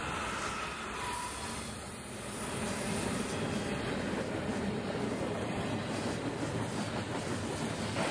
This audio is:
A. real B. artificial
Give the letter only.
A